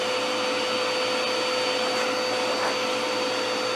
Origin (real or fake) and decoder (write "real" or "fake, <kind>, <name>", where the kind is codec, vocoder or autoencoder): real